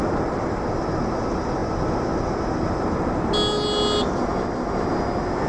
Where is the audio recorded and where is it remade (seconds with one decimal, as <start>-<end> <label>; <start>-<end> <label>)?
0.0-5.5 recorded